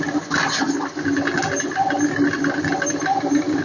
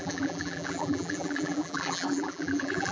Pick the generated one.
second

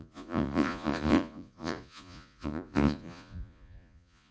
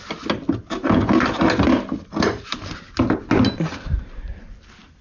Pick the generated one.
first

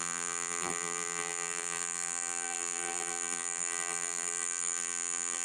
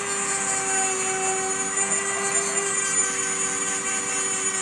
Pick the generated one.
first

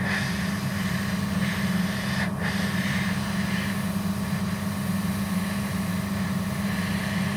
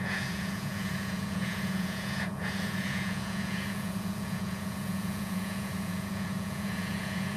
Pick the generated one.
second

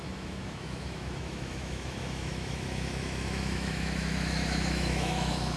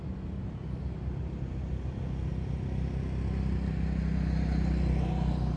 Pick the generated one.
first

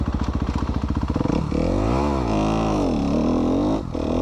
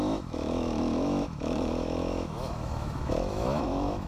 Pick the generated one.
second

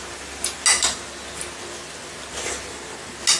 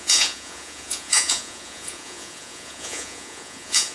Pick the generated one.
second